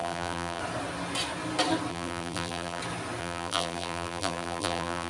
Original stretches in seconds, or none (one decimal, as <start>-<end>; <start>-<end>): 0.6-1.9; 2.8-3.2